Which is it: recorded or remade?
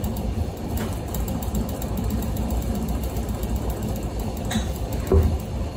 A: remade